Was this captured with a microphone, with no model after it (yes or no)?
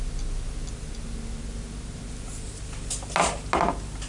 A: yes